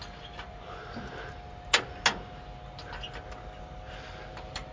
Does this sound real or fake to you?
real